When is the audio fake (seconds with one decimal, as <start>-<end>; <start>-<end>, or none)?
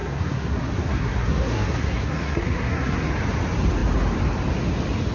0.0-3.1